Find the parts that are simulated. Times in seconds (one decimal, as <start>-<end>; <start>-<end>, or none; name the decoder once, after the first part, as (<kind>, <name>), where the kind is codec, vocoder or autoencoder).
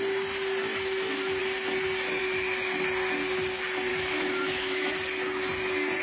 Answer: 3.9-4.9 (autoencoder, DAC-VAE)